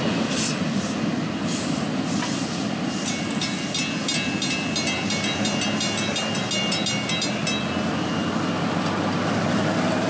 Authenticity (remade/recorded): recorded